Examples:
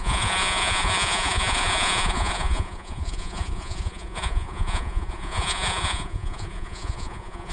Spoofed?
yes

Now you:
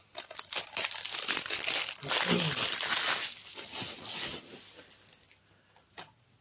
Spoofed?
no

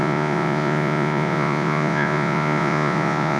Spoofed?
yes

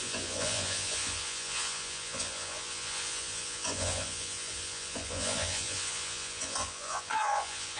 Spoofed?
yes